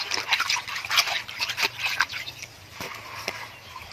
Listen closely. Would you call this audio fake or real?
fake